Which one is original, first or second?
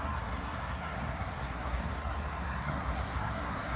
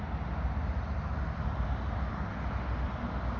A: second